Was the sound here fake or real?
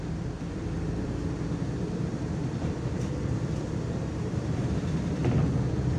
fake